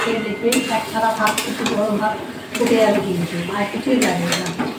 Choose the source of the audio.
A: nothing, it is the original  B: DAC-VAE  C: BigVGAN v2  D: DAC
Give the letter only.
C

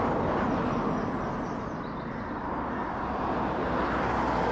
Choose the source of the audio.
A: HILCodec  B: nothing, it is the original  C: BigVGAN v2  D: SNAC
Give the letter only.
B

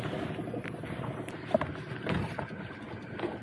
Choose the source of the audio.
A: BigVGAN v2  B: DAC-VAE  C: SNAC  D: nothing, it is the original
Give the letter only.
D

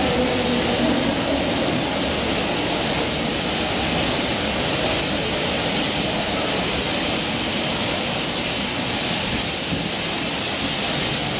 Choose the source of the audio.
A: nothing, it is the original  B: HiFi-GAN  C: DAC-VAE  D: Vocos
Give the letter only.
A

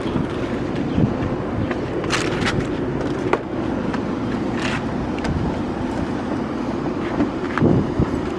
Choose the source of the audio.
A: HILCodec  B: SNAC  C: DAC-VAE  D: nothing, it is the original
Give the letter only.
D